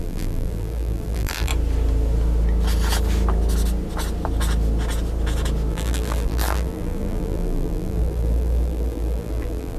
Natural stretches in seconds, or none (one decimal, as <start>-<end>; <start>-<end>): 1.5-5.7